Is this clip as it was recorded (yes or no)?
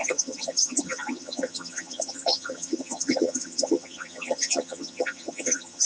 no